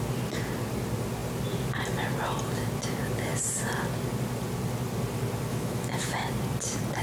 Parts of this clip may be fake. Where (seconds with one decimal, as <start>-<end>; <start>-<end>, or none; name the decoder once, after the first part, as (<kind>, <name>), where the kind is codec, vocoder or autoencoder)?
5.5-6.1 (autoencoder, DAC-VAE)